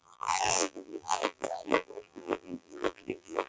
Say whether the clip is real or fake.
fake